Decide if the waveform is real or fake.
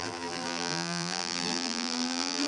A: fake